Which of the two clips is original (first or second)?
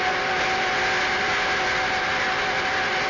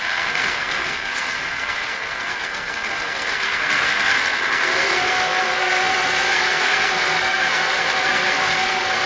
first